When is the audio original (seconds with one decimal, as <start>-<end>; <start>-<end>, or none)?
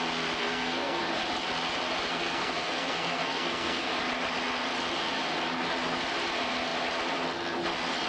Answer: 0.0-0.4; 1.0-2.1; 3.9-8.1